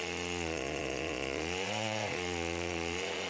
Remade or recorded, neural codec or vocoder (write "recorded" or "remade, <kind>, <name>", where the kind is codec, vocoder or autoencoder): remade, vocoder, Vocos